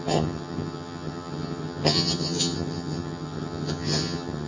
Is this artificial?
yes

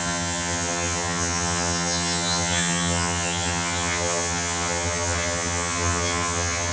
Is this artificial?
yes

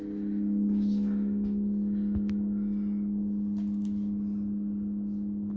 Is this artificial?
no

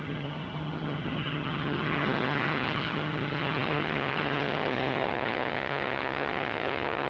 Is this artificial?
yes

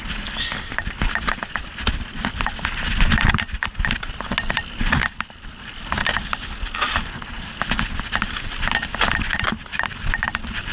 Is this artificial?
no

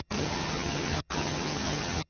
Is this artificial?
yes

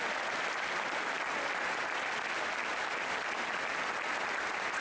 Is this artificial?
no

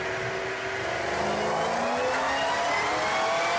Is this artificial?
no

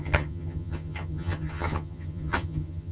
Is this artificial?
yes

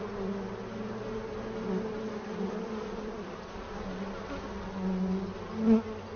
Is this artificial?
no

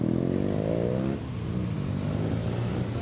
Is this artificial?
no